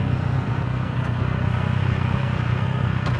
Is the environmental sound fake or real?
fake